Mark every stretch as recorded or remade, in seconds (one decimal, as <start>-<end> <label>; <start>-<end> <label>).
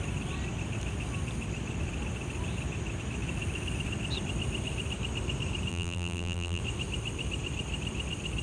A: 0.0-5.7 recorded; 5.7-6.6 remade; 6.6-8.4 recorded